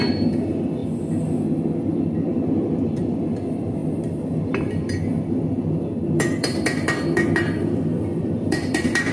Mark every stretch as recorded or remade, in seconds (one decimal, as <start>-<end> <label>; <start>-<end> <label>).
0.0-0.8 remade; 0.8-1.8 recorded; 1.8-3.8 remade; 3.8-4.4 recorded; 4.4-9.1 remade

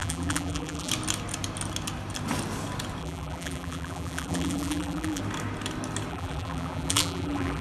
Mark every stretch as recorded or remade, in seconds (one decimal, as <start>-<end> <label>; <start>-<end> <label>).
0.0-0.9 remade; 0.9-3.0 recorded; 3.0-5.2 remade; 5.2-6.1 recorded; 6.1-7.6 remade

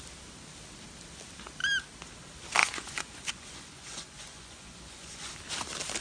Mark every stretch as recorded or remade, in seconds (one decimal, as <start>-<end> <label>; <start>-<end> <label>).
0.0-2.6 recorded; 2.6-5.3 remade; 5.3-6.0 recorded

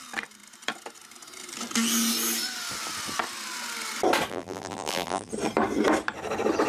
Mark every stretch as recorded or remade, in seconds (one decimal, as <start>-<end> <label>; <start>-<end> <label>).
0.0-4.3 recorded; 4.3-5.3 remade; 5.3-6.7 recorded

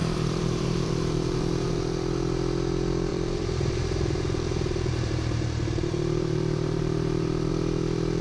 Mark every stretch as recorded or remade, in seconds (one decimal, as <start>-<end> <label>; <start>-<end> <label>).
0.0-1.8 remade; 1.8-3.1 recorded; 3.1-7.5 remade; 7.5-8.2 recorded

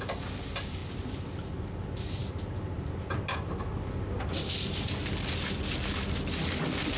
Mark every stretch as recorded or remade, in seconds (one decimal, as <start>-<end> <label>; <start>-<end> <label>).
0.0-7.0 recorded

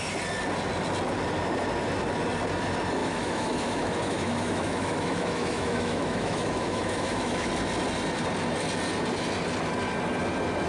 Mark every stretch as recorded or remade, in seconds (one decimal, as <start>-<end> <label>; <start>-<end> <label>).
0.0-3.0 recorded; 3.0-7.5 remade; 7.5-10.7 recorded